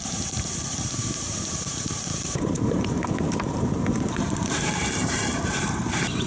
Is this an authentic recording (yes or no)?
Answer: no